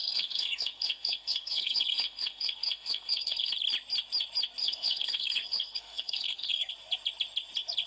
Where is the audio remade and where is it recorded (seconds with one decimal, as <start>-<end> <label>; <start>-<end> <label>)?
0.0-3.5 remade; 3.5-4.6 recorded; 4.6-6.7 remade; 6.7-7.9 recorded